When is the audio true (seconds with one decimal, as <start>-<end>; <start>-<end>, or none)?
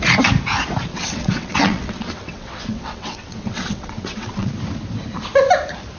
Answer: 0.0-0.9; 4.5-6.0